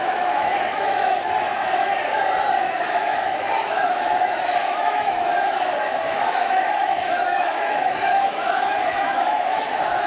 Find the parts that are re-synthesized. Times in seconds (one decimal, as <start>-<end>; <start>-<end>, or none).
0.0-1.9; 2.6-10.1